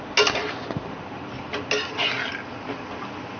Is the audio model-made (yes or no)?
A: no